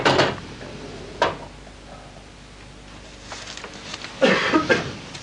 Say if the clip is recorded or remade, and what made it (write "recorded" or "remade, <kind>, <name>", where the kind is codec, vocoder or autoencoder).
recorded